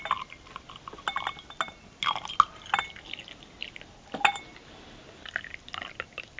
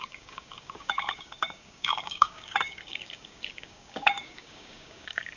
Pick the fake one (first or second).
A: second